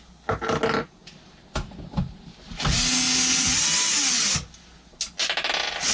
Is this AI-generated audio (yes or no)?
no